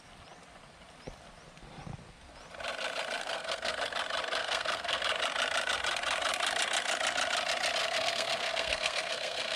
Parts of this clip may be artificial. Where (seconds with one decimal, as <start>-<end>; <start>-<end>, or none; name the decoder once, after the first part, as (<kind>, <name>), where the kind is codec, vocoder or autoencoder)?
3.2-3.8 (codec, SNAC); 4.4-5.0; 7.8-9.6

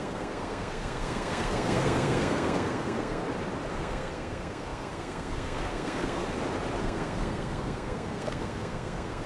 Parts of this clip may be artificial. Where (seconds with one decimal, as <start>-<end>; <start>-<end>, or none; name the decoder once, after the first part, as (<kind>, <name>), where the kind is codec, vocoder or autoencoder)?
0.0-3.2 (codec, SNAC); 3.7-6.2; 6.8-9.3

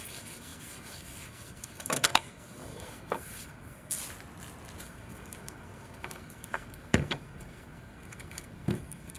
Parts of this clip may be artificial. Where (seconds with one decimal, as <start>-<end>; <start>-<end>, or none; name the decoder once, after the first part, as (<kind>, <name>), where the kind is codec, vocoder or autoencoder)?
0.0-4.0 (codec, SNAC); 4.8-9.2